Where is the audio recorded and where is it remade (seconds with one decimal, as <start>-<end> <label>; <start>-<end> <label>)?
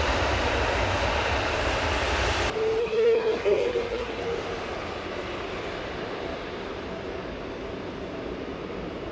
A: 0.0-2.8 recorded; 2.8-4.2 remade; 4.2-9.1 recorded